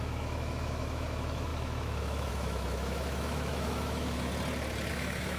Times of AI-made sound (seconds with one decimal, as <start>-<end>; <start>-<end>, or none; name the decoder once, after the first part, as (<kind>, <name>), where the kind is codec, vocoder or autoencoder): 0.0-4.3 (autoencoder, DAC-VAE); 4.9-5.4